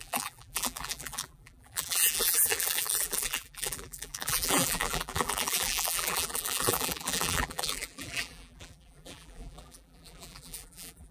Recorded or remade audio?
remade